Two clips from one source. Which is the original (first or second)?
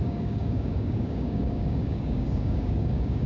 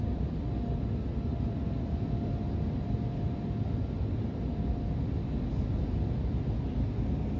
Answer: second